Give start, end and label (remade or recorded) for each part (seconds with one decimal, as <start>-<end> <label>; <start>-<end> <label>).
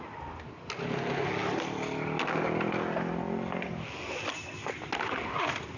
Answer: 0.0-5.8 recorded